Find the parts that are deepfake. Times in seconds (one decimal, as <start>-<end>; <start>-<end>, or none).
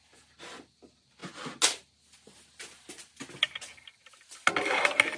none